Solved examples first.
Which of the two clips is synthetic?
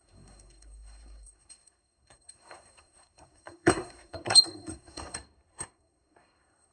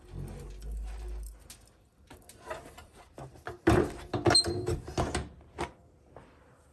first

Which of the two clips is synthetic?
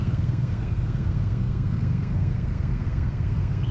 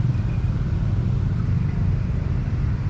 first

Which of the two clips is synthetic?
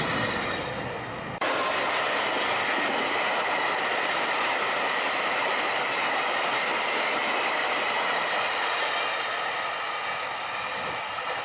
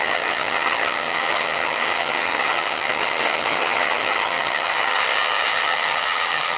second